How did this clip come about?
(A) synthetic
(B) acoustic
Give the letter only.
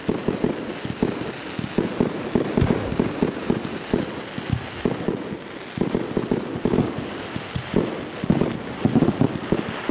B